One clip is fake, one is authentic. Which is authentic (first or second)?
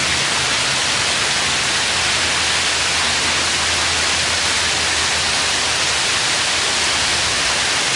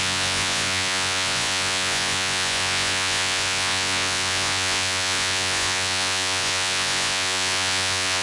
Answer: first